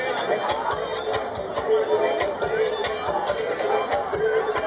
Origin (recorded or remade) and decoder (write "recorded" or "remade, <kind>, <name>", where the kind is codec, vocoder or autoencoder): recorded